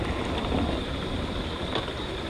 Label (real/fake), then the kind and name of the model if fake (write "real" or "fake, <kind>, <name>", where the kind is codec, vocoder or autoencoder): real